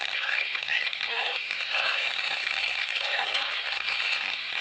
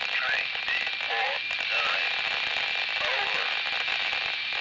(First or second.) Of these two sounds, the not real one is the first